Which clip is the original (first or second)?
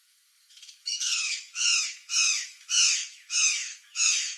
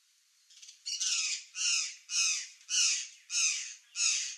second